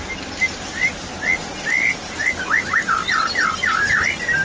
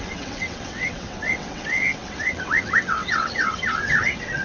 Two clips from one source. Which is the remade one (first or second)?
second